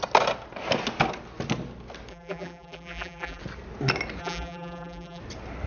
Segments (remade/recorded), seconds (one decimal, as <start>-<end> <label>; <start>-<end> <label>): 0.0-2.1 recorded; 2.1-3.4 remade; 3.4-4.2 recorded; 4.2-5.2 remade; 5.2-5.7 recorded